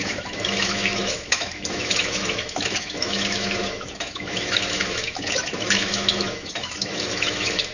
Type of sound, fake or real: fake